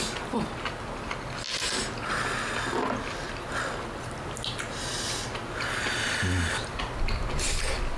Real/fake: real